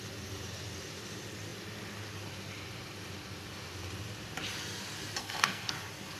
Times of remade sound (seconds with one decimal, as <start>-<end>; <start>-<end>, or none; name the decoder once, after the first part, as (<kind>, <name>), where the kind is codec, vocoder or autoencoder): 5.2-5.7 (codec, SNAC)

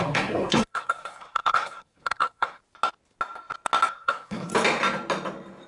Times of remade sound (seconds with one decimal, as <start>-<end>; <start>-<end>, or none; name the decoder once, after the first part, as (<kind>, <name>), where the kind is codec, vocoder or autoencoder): 0.0-2.6 (codec, SNAC); 3.9-4.5

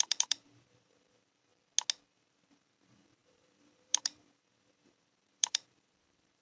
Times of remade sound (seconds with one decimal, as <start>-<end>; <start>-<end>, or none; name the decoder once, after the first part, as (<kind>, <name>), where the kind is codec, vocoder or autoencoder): 0.0-1.5 (vocoder, BigVGAN v2); 2.1-6.4